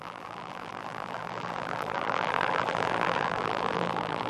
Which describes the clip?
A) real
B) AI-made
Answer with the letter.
B